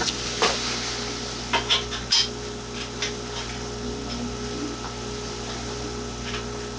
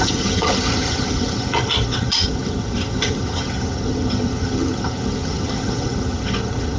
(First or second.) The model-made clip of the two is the second